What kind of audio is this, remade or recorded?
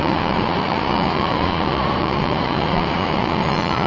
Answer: remade